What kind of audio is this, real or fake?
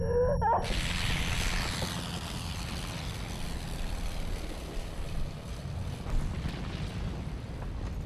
real